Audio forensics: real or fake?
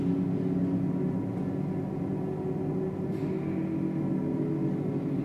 real